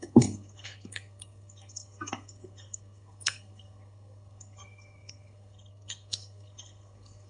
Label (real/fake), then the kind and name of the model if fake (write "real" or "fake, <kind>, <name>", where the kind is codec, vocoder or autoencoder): fake, codec, SNAC